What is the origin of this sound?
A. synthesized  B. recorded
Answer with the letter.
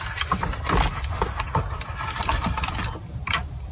B